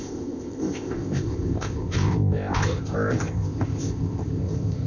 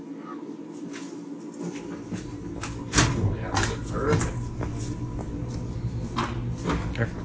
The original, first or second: second